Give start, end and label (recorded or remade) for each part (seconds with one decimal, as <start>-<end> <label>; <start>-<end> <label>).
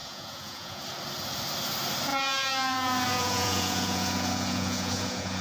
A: 0.0-0.8 remade; 0.8-2.1 recorded; 2.1-5.4 remade